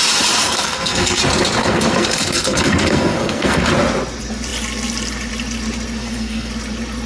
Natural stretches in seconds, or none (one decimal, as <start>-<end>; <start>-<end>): 0.0-0.4; 1.2-1.6; 3.7-6.0; 6.5-7.1